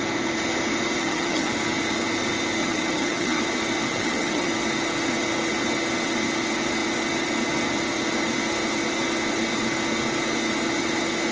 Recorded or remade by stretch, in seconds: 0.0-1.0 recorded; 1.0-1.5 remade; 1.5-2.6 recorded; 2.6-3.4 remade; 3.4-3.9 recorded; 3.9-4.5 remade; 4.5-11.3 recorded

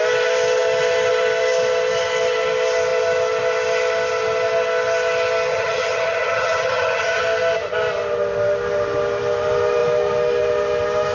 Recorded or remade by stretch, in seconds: 0.0-5.5 recorded; 5.5-7.2 remade; 7.2-11.1 recorded

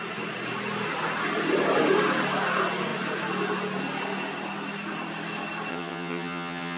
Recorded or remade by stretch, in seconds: 0.0-5.7 recorded; 5.7-6.8 remade

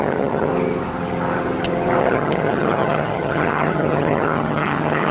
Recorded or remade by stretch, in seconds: 0.0-0.5 remade; 0.5-2.0 recorded; 2.0-5.1 remade

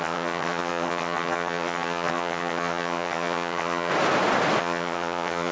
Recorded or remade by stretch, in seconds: 0.0-3.9 remade; 3.9-4.6 recorded; 4.6-5.5 remade

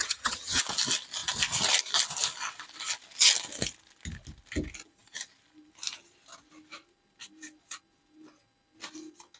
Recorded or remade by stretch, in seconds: 0.0-0.6 remade; 0.6-9.4 recorded

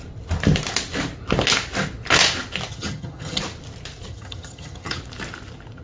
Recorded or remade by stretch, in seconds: 0.0-2.7 recorded; 2.7-3.4 remade; 3.4-4.1 recorded; 4.1-5.0 remade; 5.0-5.8 recorded